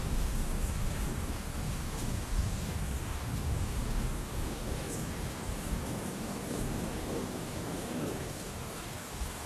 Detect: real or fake fake